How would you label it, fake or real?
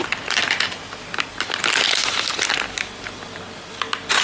real